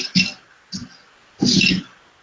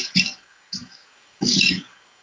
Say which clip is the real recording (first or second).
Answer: first